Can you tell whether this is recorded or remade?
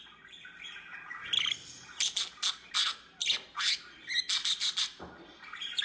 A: recorded